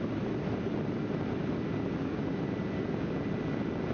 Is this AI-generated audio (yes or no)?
no